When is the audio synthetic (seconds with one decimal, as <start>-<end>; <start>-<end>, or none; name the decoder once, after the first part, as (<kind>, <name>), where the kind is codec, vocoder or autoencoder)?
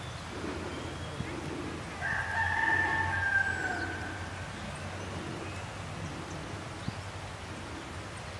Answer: none